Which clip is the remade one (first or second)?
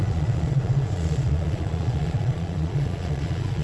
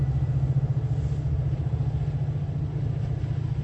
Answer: first